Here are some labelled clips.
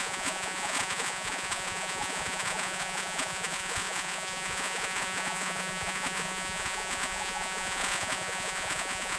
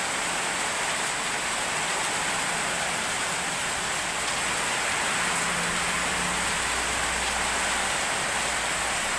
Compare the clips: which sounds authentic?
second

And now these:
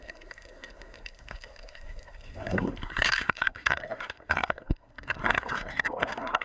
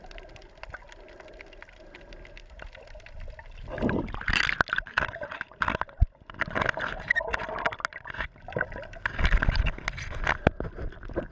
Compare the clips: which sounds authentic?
second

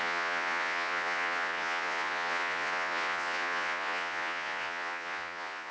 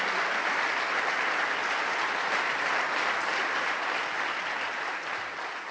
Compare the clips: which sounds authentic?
second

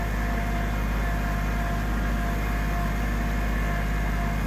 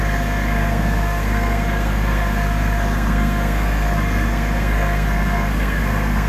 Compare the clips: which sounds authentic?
first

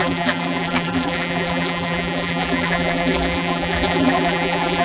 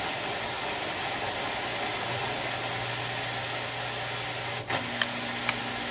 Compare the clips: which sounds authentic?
second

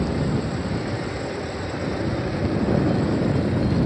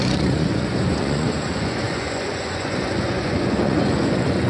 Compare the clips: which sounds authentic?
first